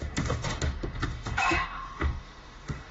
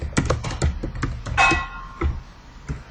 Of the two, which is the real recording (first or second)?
second